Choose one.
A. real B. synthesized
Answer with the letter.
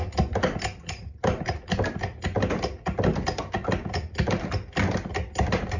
A